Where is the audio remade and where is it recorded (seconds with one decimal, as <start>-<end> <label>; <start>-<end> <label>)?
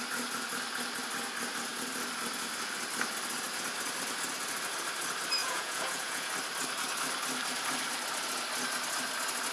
0.0-5.4 recorded; 5.4-6.3 remade; 6.3-9.5 recorded